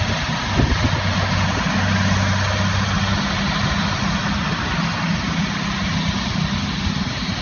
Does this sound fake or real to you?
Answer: real